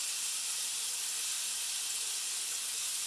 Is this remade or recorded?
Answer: recorded